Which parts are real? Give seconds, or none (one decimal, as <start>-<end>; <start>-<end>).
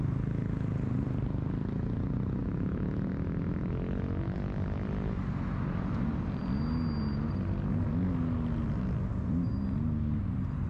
0.0-2.4; 3.1-10.7